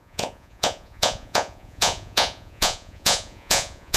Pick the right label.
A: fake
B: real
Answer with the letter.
A